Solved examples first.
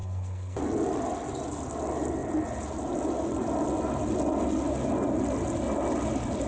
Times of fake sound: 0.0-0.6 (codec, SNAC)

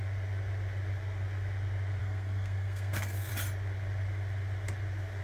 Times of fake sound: 2.0-3.3 (codec, SNAC)